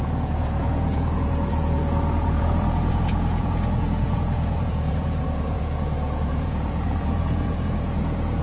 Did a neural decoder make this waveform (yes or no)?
yes